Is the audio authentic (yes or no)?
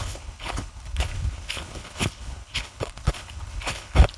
no